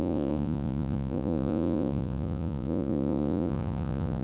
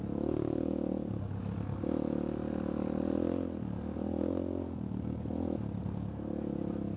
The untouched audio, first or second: second